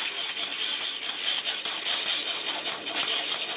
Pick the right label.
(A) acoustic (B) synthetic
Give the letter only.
A